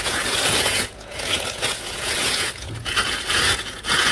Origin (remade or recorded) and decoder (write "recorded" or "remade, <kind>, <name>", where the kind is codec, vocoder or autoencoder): remade, vocoder, Vocos